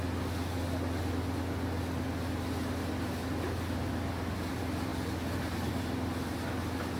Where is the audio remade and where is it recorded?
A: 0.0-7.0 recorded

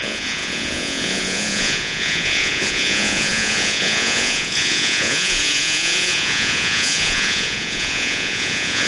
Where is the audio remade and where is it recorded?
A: 0.0-8.9 remade